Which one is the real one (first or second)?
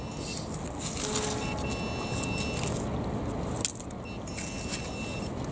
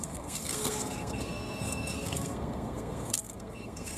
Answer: first